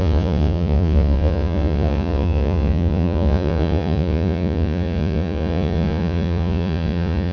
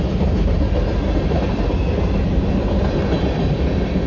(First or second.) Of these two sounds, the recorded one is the second